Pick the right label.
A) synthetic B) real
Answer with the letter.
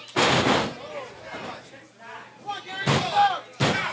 B